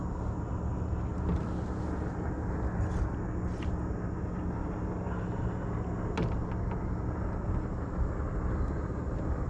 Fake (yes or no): no